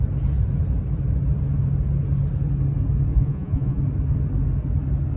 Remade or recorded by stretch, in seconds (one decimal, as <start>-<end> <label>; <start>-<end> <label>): 0.0-3.1 recorded; 3.1-3.8 remade; 3.8-5.2 recorded